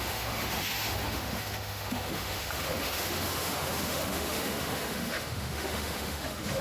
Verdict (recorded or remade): remade